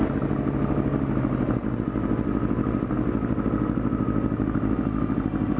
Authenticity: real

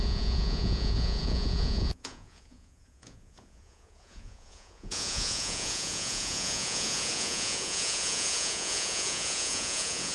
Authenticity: fake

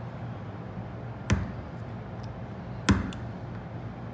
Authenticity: real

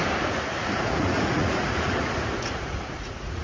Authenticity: fake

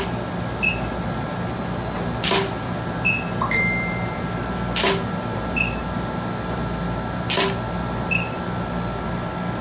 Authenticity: real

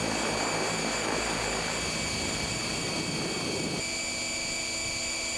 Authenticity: real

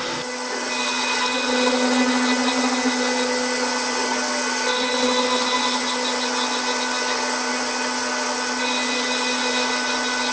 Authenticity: real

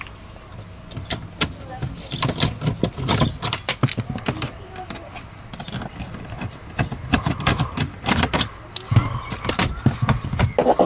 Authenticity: real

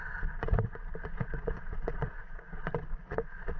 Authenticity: fake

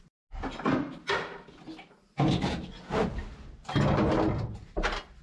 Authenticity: real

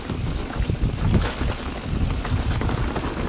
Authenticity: real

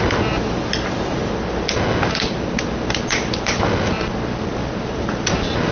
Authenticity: real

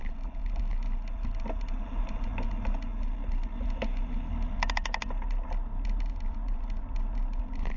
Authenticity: real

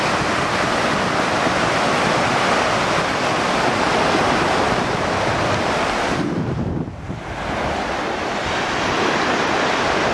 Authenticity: real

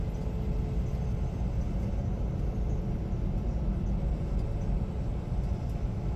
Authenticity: real